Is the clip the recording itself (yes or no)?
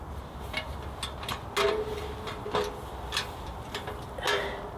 yes